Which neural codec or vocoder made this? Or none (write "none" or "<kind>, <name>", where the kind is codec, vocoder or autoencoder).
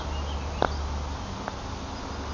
none